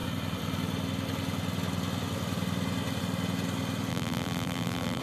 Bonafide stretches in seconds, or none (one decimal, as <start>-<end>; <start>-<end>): 0.0-3.9